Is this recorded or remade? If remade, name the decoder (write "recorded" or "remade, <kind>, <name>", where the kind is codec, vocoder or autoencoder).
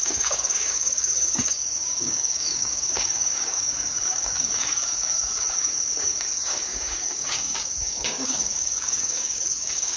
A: remade, codec, DAC